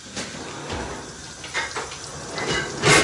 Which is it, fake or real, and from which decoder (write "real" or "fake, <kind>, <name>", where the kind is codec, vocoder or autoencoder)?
real